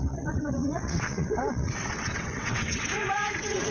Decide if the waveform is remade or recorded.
remade